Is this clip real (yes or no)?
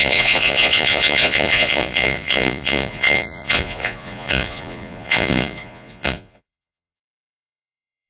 no